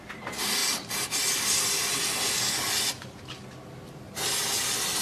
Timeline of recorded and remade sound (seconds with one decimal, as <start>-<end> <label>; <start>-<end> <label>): 0.0-5.0 recorded